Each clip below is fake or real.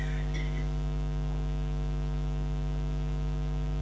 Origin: real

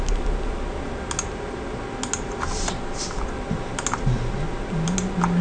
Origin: real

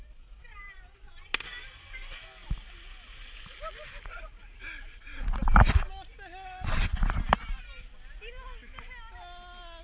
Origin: real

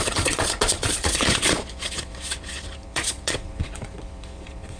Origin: fake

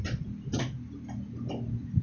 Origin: real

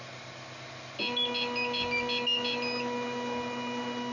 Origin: real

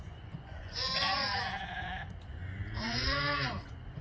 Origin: fake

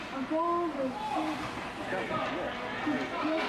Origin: real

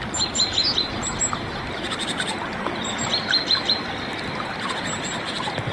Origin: real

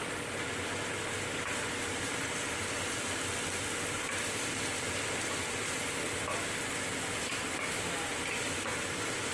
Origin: real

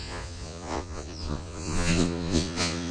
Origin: fake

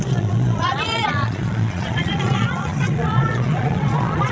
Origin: fake